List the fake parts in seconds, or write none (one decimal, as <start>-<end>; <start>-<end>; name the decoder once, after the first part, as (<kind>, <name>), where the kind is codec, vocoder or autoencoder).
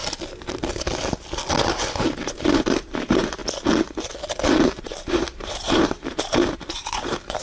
1.5-3.4 (vocoder, BigVGAN v2); 4.8-7.4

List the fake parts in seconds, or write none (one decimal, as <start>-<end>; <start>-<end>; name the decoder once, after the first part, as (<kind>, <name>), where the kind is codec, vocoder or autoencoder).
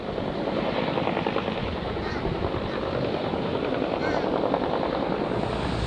1.6-2.2 (vocoder, Vocos)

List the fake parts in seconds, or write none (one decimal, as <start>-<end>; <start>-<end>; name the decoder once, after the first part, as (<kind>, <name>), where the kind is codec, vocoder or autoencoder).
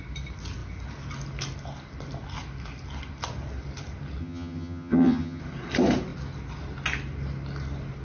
4.2-5.4 (vocoder, HiFi-GAN)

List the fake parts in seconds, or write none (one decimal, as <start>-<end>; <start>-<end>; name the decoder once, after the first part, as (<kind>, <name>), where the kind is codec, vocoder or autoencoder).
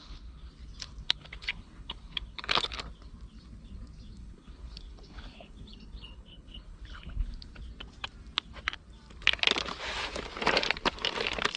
0.0-0.5 (codec, HILCodec); 1.0-2.8; 4.2-7.6